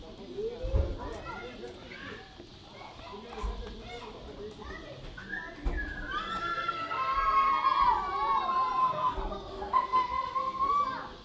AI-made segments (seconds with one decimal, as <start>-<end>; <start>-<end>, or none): 6.4-7.5; 8.8-10.7